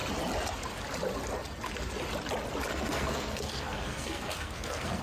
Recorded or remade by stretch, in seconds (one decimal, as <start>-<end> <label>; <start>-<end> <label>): 0.0-2.7 recorded; 2.7-5.0 remade